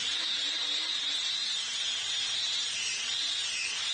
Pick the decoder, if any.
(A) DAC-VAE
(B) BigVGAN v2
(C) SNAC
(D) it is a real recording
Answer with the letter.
B